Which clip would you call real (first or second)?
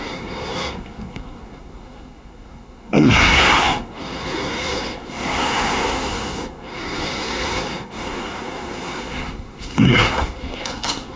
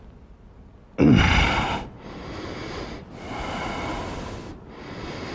second